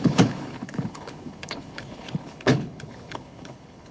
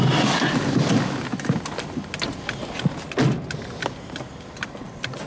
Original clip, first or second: second